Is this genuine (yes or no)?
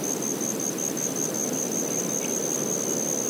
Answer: yes